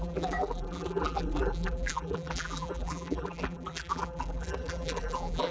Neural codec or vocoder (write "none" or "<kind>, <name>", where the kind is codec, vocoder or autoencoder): vocoder, BigVGAN v2